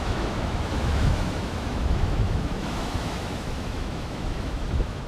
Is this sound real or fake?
fake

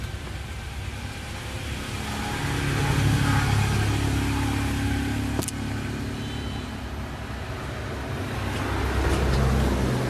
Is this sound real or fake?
real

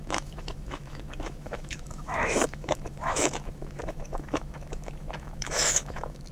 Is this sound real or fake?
fake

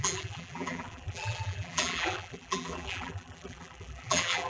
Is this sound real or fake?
fake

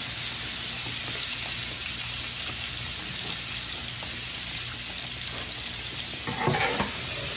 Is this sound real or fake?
real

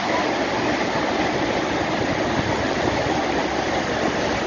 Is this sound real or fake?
real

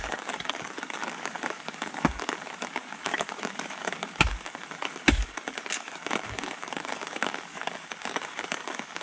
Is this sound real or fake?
fake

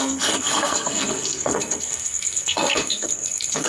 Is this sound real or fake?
fake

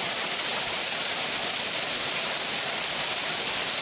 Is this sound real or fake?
real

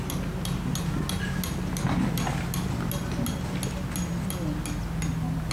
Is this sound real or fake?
real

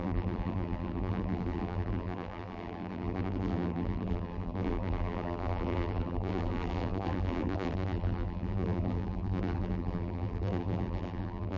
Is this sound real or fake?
fake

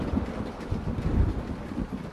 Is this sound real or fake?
real